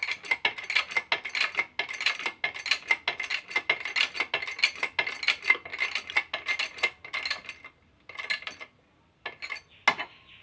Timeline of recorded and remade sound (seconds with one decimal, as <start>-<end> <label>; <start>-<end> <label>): 0.0-10.4 recorded